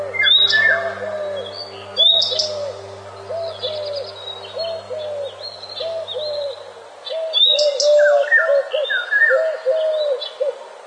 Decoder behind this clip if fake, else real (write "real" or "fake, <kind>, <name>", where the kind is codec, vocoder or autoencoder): real